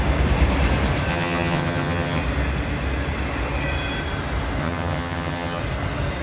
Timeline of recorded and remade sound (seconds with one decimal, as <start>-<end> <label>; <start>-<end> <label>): 0.0-1.1 recorded; 1.1-2.2 remade; 2.2-4.6 recorded; 4.6-5.6 remade; 5.6-6.2 recorded